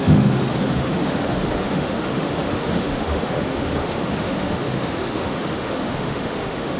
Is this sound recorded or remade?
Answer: remade